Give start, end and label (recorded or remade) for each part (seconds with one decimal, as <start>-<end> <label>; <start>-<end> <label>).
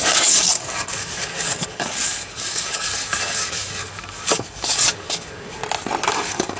0.0-5.6 remade; 5.6-6.1 recorded; 6.1-6.6 remade